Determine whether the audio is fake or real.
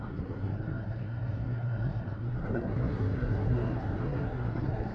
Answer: fake